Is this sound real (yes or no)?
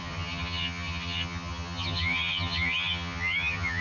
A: no